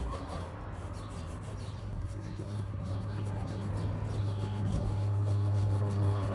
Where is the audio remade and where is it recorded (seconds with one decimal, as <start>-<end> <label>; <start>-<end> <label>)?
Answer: 0.0-0.4 remade; 0.4-1.8 recorded; 1.8-3.7 remade; 3.7-4.2 recorded; 4.2-6.3 remade